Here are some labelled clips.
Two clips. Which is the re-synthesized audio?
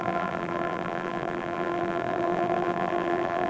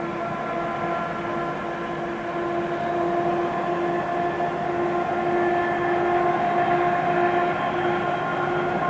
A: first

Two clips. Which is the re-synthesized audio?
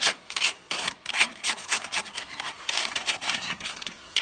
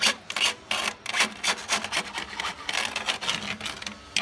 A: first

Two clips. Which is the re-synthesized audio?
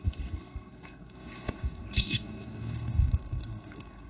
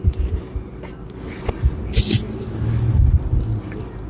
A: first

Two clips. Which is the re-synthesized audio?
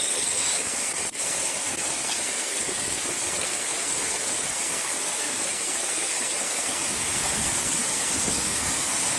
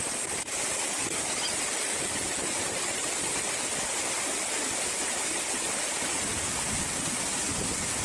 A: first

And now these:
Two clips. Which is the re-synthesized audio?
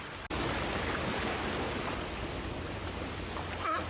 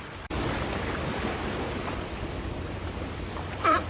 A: second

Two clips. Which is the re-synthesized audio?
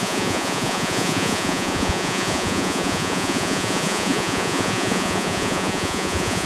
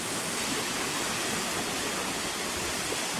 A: first